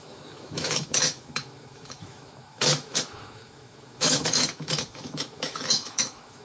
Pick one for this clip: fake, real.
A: fake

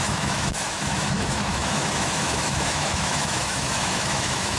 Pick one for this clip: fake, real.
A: fake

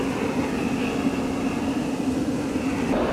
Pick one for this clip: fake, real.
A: real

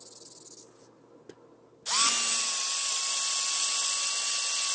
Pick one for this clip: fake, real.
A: real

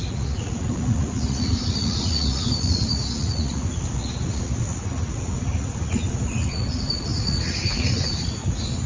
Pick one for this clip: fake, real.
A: fake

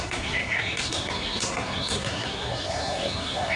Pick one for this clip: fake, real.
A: fake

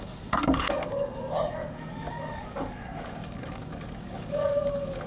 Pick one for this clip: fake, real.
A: fake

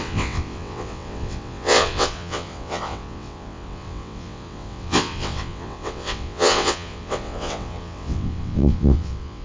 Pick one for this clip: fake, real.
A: fake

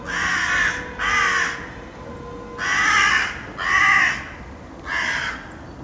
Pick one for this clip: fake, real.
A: real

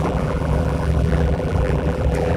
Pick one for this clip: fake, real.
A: fake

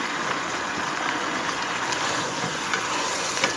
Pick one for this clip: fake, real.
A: fake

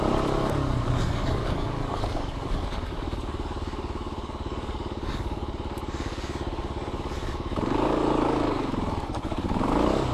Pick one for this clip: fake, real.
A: fake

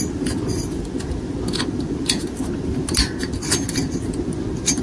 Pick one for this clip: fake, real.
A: real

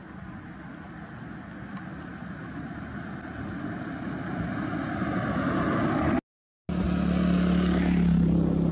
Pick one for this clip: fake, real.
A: real